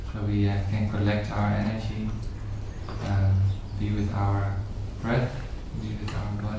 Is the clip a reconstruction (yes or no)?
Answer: no